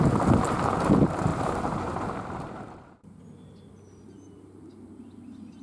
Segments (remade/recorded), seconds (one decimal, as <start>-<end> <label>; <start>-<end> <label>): 0.0-1.3 recorded; 1.3-3.2 remade; 3.2-5.6 recorded